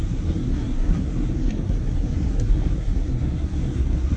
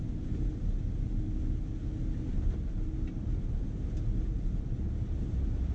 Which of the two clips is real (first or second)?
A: second